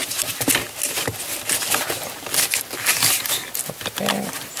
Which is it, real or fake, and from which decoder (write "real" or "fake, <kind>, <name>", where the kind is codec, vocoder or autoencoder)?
real